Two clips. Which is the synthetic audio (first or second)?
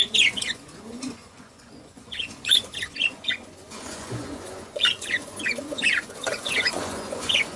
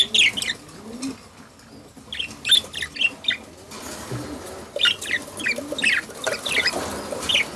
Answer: first